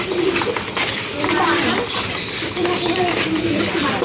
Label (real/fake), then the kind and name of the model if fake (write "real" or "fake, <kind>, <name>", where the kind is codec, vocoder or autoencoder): fake, vocoder, BigVGAN v2